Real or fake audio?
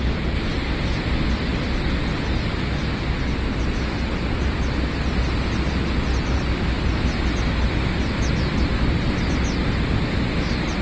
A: real